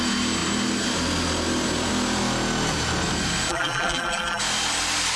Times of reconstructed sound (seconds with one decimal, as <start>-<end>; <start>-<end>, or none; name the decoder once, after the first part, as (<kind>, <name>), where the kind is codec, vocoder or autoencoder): 3.5-4.4 (vocoder, BigVGAN v2)